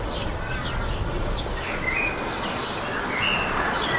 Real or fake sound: fake